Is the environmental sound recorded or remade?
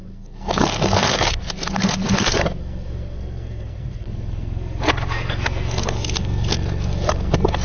remade